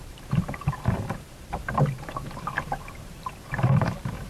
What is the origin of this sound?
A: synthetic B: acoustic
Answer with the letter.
A